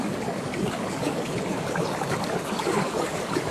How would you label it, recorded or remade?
remade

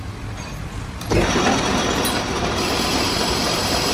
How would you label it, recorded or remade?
remade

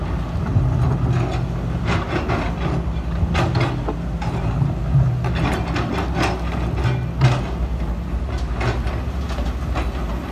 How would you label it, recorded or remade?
recorded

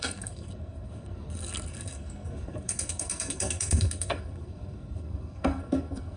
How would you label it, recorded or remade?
remade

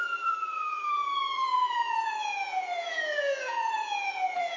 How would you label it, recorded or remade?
remade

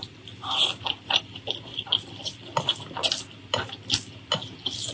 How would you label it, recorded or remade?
recorded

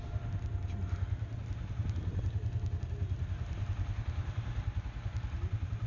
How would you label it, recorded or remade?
recorded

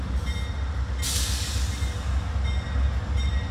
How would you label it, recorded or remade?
recorded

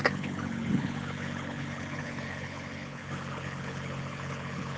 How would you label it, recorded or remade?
remade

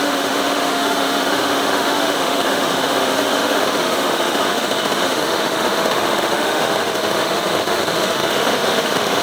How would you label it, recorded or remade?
remade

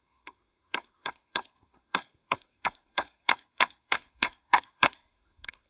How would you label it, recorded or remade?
remade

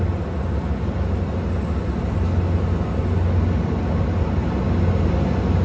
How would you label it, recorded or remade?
recorded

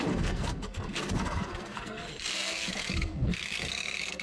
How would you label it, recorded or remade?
remade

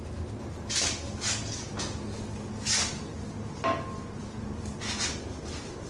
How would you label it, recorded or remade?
recorded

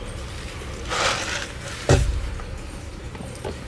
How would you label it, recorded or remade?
recorded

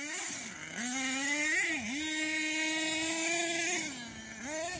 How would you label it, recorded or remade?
recorded